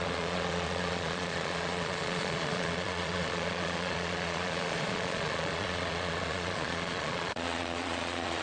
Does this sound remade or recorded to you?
remade